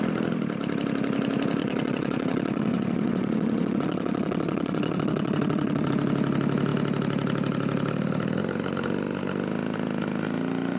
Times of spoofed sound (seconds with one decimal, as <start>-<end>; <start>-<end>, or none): 1.6-5.9

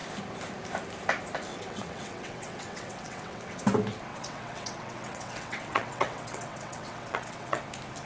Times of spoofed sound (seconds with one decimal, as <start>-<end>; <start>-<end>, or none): 1.5-3.6; 4.1-7.6

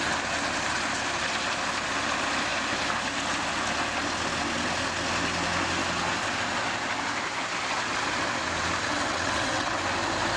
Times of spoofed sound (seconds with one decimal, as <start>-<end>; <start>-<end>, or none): 8.9-9.8

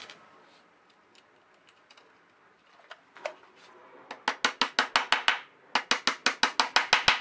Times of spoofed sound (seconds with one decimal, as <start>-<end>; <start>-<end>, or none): none

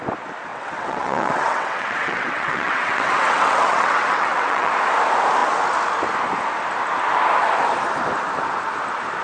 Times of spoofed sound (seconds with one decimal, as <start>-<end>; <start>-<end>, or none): 0.5-4.7

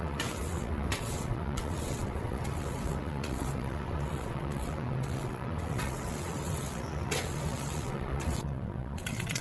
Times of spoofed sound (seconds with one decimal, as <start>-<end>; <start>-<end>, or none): 0.0-9.4

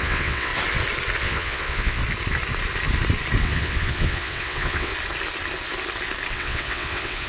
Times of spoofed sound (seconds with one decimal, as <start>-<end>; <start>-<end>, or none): 0.0-0.5; 1.2-2.0; 3.4-4.9; 6.3-7.3

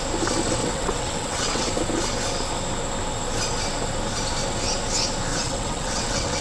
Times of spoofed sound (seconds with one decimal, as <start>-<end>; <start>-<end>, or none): 0.6-1.7; 5.3-6.4